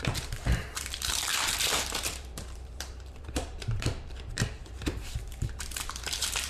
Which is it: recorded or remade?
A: remade